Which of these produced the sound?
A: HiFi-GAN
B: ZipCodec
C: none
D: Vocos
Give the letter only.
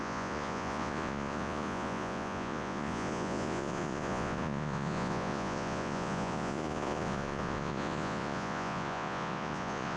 D